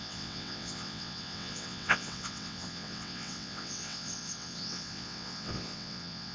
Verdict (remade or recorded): remade